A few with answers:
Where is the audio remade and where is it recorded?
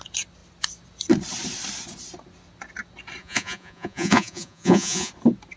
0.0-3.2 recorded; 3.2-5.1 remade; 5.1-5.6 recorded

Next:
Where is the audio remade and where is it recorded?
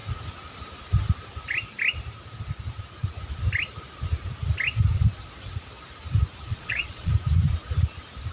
0.0-6.5 recorded; 6.5-7.1 remade; 7.1-8.3 recorded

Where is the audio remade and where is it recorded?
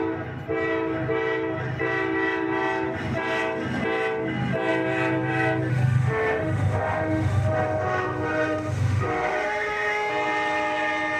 0.0-5.7 recorded; 5.7-10.1 remade; 10.1-11.2 recorded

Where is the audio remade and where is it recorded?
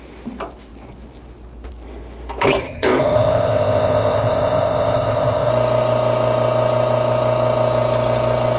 0.0-2.6 recorded; 2.6-5.5 remade; 5.5-8.6 recorded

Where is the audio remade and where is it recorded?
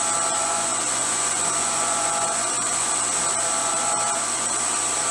0.0-0.4 recorded; 0.4-2.9 remade; 2.9-3.6 recorded; 3.6-4.5 remade; 4.5-5.1 recorded